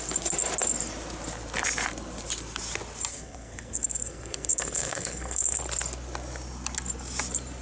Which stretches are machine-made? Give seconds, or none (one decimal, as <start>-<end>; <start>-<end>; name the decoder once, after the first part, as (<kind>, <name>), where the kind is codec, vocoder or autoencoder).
3.1-5.6 (codec, SNAC)